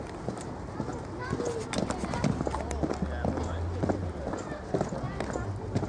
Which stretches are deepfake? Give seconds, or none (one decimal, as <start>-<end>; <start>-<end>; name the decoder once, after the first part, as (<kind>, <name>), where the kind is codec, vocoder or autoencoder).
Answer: none

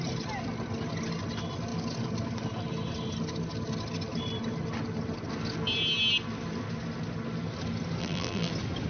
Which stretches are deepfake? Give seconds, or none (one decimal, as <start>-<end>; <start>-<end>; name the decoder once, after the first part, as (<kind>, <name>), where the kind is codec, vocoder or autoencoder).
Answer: 8.0-8.5 (vocoder, BigVGAN v2)

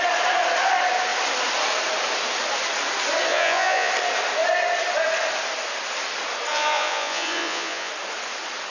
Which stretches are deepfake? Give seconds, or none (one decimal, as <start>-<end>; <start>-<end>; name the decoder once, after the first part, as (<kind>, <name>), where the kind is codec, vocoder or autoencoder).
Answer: 3.3-3.9 (vocoder, Vocos); 6.5-7.9

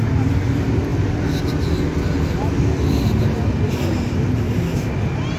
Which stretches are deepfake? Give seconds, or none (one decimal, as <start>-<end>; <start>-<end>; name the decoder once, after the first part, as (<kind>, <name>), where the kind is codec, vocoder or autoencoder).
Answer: none

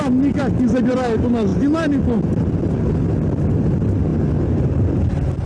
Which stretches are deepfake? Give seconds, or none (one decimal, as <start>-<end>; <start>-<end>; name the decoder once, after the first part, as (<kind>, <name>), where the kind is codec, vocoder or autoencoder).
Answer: none

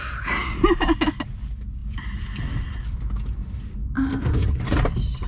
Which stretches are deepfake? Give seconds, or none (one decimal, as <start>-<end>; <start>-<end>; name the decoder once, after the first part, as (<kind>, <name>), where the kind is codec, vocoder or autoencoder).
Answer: 1.8-5.3 (vocoder, BigVGAN v2)

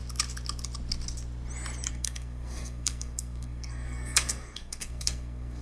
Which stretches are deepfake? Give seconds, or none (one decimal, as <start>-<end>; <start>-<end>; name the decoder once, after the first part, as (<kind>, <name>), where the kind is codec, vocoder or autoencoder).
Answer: 1.9-5.6 (codec, SNAC)